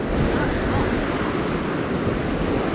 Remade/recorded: recorded